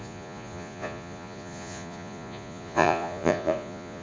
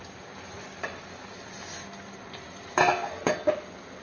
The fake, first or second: first